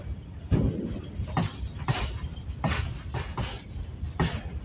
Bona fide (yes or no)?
yes